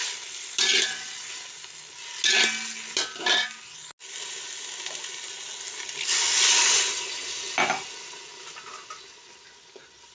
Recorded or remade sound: recorded